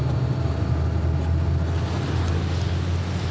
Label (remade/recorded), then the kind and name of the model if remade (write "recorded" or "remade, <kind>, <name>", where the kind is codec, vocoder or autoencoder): recorded